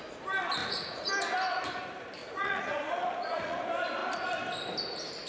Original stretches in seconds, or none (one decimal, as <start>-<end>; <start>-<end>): 0.0-0.6; 1.1-2.2; 3.6-5.3